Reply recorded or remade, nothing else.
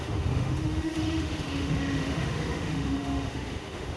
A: remade